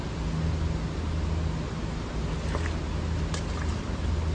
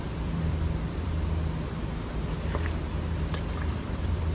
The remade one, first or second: second